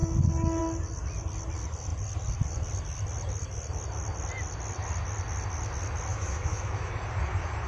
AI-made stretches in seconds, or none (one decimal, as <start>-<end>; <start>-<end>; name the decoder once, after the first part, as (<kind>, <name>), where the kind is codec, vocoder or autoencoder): 6.1-6.9 (autoencoder, DAC-VAE)